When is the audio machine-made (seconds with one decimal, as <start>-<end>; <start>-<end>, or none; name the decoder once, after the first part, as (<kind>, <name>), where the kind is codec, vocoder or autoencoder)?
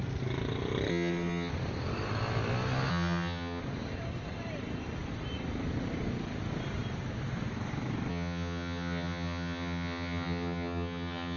0.9-1.5 (vocoder, HiFi-GAN); 2.9-3.6; 8.1-11.4